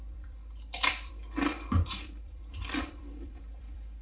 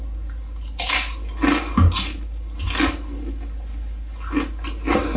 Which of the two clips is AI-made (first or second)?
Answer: first